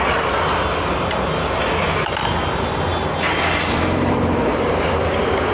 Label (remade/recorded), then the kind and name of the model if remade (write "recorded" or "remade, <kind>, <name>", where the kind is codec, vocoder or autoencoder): recorded